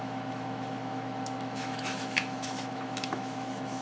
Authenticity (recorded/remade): remade